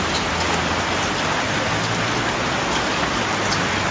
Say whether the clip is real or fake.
real